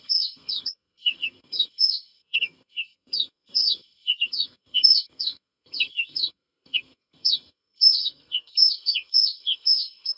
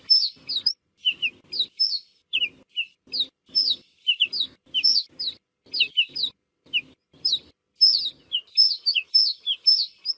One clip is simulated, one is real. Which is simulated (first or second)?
first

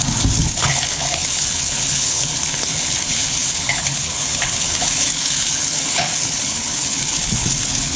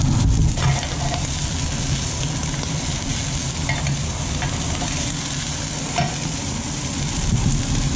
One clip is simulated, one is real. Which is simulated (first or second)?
first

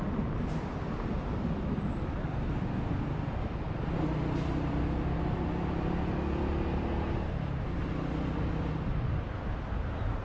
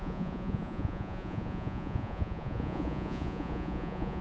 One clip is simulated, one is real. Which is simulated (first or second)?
second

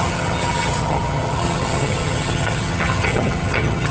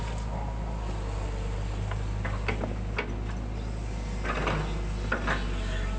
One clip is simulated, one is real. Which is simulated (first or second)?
first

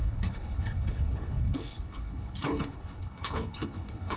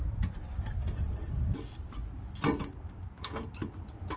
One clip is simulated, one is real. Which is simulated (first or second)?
first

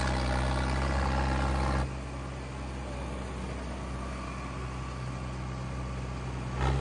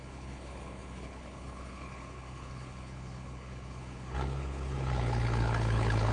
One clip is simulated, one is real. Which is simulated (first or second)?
second